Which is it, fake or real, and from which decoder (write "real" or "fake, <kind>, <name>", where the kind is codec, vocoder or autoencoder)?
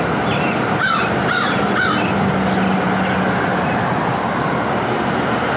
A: real